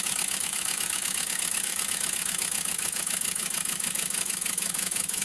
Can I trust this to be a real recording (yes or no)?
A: no